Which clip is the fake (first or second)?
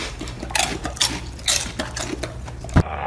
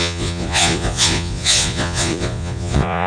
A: second